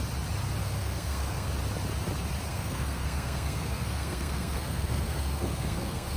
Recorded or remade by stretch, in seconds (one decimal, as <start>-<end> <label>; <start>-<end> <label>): 0.0-0.6 recorded; 0.6-1.5 remade; 1.5-2.5 recorded; 2.5-6.2 remade